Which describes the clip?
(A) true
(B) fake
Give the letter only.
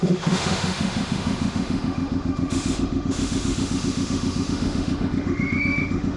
B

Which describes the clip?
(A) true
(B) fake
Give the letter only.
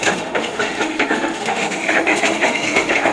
B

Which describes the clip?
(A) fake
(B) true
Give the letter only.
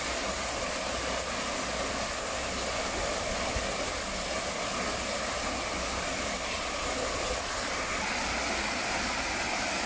B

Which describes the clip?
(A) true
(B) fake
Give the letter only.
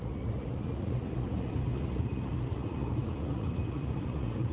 B